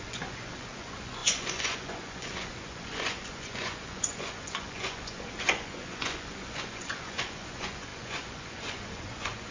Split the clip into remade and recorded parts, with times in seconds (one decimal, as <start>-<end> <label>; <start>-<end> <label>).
0.0-9.5 remade